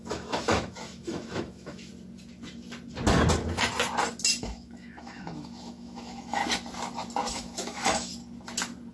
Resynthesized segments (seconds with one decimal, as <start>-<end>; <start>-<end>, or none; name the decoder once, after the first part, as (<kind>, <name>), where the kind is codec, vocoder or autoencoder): 0.0-1.9 (autoencoder, DAC-VAE); 4.4-6.4; 7.3-8.1